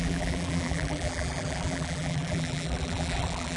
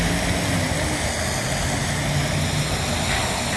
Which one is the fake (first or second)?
first